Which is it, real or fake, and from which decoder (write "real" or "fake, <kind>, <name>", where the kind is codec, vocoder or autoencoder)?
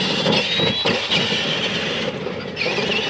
real